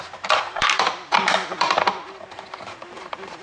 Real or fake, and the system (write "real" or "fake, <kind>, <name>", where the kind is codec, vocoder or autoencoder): fake, vocoder, BigVGAN v2